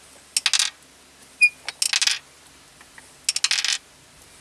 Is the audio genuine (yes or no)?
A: yes